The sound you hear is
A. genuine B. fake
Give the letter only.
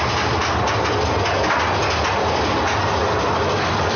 A